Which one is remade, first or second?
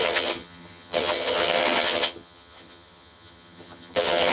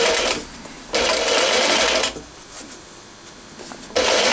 first